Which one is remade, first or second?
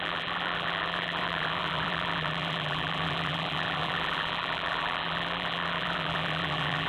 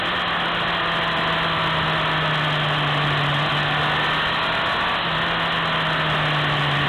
first